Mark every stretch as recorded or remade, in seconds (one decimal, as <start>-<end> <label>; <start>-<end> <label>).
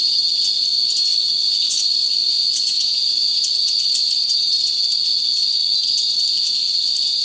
0.0-1.1 recorded; 1.1-4.5 remade; 4.5-7.2 recorded